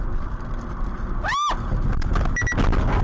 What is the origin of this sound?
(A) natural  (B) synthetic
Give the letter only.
A